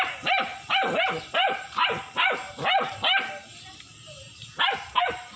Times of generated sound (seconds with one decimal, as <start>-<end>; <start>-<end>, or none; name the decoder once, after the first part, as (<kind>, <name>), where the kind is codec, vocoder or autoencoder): none